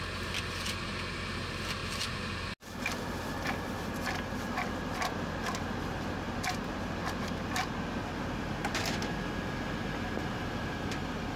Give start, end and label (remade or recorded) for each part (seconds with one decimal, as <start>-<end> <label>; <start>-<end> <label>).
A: 0.0-11.4 recorded